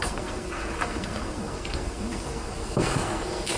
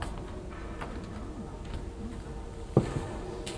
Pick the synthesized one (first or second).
first